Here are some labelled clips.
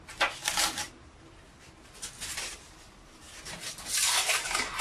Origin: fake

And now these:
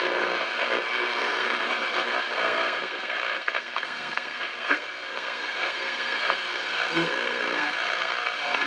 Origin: fake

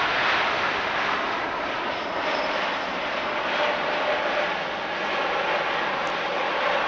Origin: real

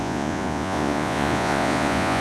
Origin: fake